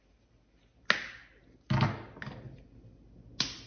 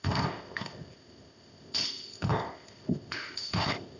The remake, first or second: second